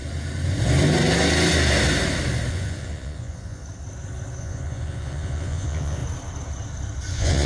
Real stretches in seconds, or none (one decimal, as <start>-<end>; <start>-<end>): 0.0-2.5; 3.6-4.4; 6.0-7.1